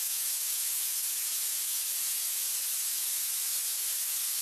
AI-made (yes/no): yes